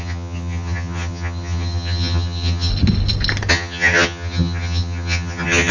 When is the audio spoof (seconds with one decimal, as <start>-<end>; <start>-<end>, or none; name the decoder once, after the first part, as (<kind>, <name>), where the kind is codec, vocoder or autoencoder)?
0.0-2.7 (vocoder, HiFi-GAN); 3.5-5.7